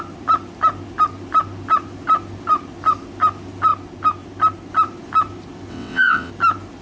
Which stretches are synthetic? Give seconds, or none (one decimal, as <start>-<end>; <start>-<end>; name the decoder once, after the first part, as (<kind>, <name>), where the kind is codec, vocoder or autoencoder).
5.7-6.3 (vocoder, WaveNeXt)